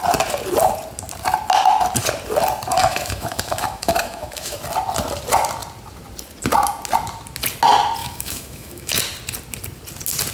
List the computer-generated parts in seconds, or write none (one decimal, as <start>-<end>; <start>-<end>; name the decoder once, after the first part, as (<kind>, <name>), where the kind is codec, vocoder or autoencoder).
2.8-4.6 (autoencoder, DAC-VAE); 8.0-9.0